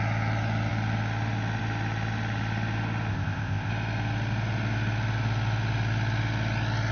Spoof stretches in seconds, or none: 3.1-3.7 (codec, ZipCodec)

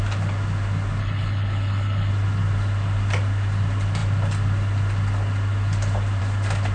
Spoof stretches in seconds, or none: 1.0-2.1 (codec, HILCodec)

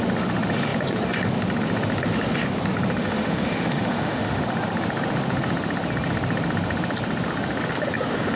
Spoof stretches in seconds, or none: 3.0-4.4 (autoencoder, DAC-VAE)

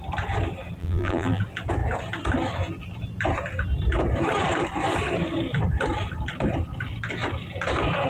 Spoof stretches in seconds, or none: 0.8-1.4 (vocoder, BigVGAN v2)

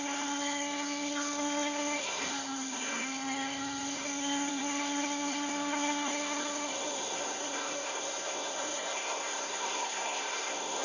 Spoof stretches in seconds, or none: 0.0-10.8 (codec, SNAC)